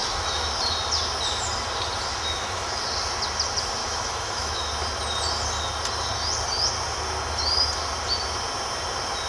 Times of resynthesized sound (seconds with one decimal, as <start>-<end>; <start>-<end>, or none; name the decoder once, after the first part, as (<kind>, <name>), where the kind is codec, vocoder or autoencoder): 0.0-0.5 (autoencoder, DAC-VAE); 2.1-2.8; 3.8-4.7